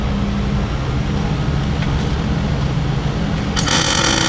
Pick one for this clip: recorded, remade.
recorded